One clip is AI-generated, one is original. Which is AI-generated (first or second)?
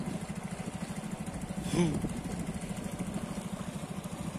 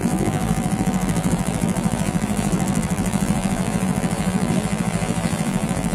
second